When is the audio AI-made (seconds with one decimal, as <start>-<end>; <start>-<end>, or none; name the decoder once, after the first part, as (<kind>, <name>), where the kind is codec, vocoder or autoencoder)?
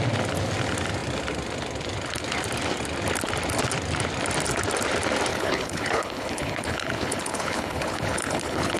5.3-8.8 (codec, HILCodec)